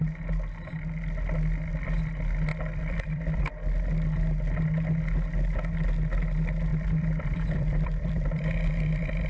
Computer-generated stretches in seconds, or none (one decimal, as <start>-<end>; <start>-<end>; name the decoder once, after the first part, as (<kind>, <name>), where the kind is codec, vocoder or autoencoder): 2.5-3.5 (vocoder, BigVGAN v2); 6.7-8.7